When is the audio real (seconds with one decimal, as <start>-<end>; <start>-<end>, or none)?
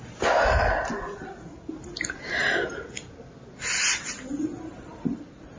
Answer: 0.0-5.6